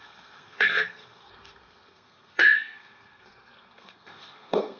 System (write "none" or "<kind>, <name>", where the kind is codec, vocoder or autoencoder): codec, SNAC